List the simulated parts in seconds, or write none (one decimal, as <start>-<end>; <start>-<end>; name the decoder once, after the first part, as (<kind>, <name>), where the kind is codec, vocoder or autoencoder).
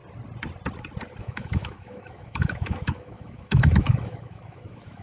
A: 1.2-5.0 (autoencoder, DAC-VAE)